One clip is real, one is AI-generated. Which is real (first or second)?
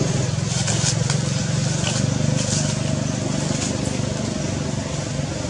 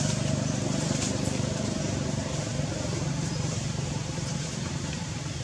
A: first